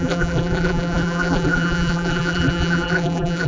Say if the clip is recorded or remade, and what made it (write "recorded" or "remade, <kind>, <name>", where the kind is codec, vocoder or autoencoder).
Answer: remade, vocoder, BigVGAN v2